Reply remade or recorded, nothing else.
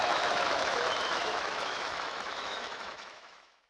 remade